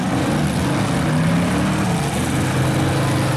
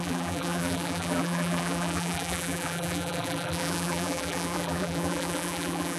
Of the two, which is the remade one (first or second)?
second